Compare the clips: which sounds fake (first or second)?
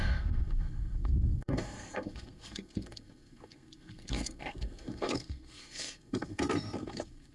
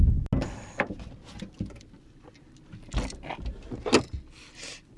first